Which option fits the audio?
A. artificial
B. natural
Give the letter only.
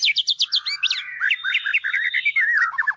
B